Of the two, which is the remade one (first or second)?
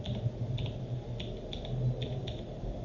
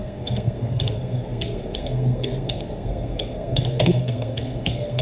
second